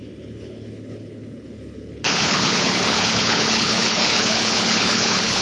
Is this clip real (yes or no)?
no